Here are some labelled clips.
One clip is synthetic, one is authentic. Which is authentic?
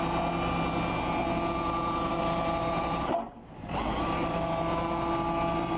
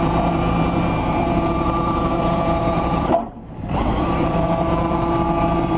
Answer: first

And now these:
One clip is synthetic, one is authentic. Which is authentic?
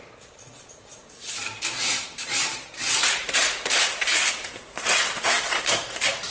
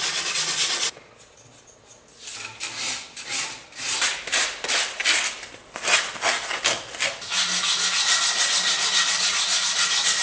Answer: second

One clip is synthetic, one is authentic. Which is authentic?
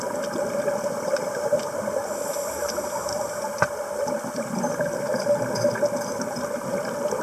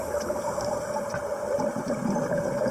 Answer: first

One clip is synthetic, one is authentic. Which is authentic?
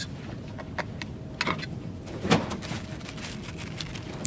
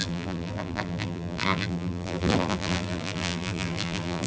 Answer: first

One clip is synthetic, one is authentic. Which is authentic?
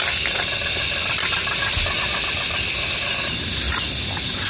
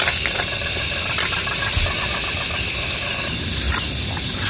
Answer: first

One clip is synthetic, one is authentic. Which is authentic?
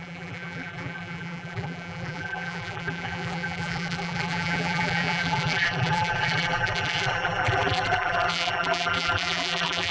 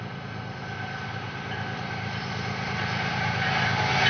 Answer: second